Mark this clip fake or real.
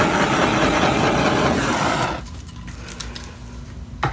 real